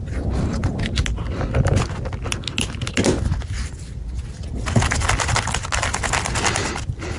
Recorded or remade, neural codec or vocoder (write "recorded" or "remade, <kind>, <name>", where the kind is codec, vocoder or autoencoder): recorded